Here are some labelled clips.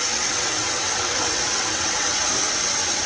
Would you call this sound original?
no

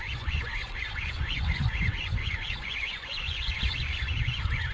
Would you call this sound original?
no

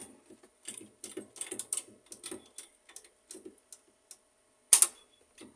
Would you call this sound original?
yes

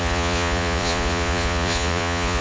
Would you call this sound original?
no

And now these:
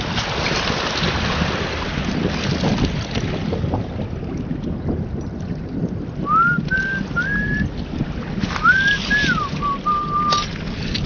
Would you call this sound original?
yes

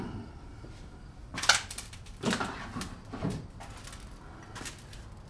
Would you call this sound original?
yes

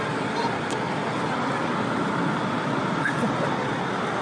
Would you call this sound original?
yes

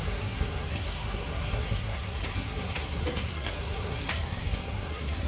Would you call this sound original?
no